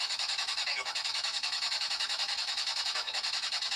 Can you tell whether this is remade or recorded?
remade